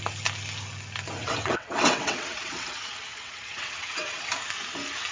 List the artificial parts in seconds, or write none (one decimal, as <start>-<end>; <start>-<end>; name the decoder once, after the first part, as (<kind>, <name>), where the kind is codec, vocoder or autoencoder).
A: 1.2-4.3 (vocoder, WaveNeXt)